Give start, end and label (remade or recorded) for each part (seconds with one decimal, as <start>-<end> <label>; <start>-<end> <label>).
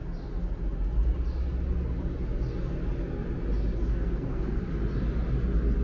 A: 0.0-3.9 recorded; 3.9-4.6 remade; 4.6-5.8 recorded